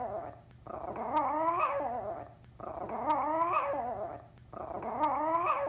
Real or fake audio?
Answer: real